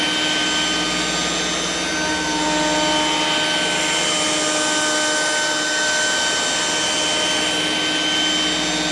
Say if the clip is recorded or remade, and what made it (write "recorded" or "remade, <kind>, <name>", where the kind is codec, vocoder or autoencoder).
recorded